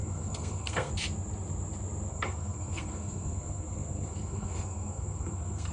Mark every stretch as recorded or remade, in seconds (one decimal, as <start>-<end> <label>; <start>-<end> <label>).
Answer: 0.0-0.9 remade; 0.9-2.1 recorded; 2.1-5.7 remade

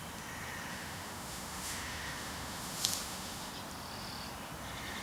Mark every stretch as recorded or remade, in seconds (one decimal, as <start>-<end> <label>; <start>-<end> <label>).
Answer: 0.0-0.7 recorded; 0.7-3.5 remade; 3.5-5.0 recorded

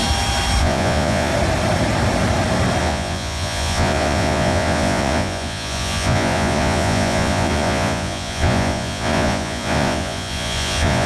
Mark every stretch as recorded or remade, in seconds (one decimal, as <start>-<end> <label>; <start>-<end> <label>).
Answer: 0.0-0.6 recorded; 0.6-1.3 remade; 1.3-2.8 recorded; 2.8-11.1 remade

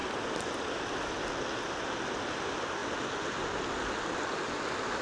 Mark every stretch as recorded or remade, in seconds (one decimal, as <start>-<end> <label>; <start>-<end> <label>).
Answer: 0.0-5.0 recorded